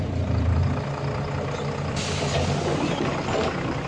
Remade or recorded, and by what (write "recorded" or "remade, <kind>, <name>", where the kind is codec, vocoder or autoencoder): recorded